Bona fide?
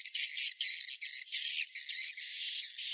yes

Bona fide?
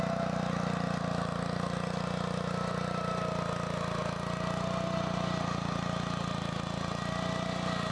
yes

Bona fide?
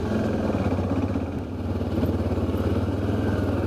yes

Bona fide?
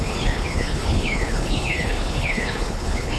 no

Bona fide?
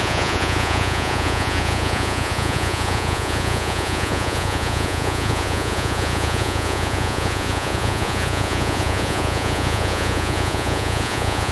no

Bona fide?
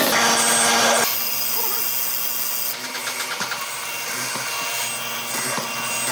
yes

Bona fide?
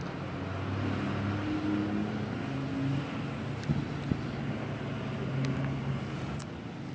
yes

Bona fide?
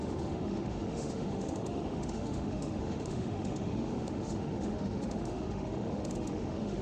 no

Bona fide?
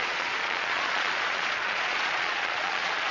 no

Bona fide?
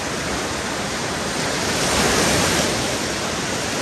yes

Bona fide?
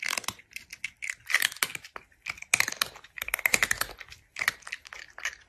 yes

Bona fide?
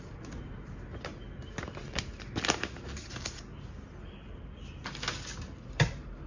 yes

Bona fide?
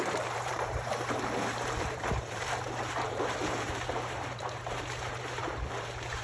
no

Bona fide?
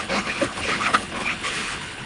no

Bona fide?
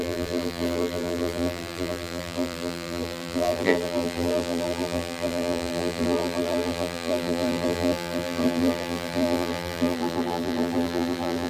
no